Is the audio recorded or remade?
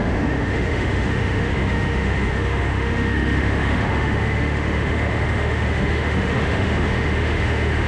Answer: remade